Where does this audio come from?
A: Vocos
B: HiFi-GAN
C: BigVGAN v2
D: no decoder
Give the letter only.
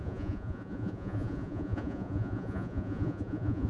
A